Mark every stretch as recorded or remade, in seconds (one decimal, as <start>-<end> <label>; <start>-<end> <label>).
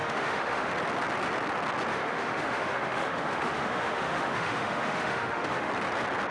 0.0-0.7 remade; 0.7-1.9 recorded; 1.9-5.7 remade; 5.7-6.3 recorded